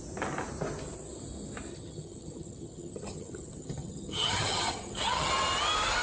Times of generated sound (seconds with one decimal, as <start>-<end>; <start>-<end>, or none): 1.7-5.3